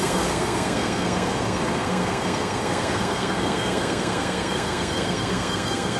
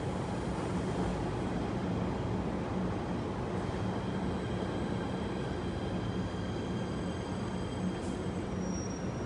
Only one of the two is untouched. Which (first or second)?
second